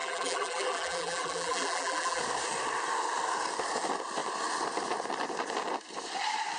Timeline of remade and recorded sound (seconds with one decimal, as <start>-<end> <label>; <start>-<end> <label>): 0.0-2.2 remade; 2.2-6.6 recorded